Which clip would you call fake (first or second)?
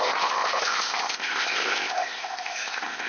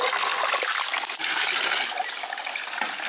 first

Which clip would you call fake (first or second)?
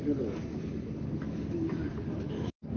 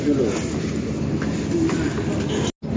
first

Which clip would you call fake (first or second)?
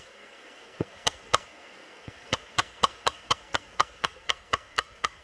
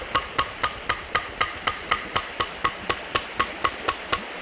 first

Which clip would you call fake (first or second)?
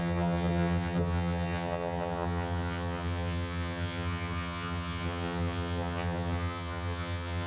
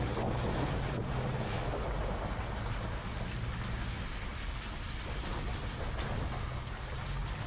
first